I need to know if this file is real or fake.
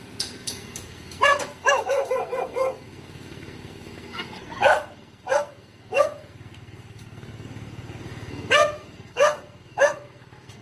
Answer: fake